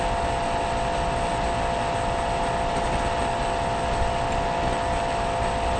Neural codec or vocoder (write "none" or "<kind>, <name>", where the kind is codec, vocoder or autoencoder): none